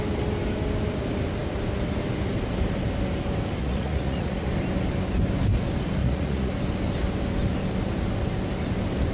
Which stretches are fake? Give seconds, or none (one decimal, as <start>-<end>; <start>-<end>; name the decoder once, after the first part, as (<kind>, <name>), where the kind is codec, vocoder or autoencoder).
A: 3.6-4.5 (vocoder, Vocos); 6.0-6.5